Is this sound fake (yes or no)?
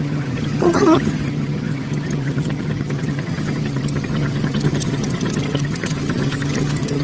yes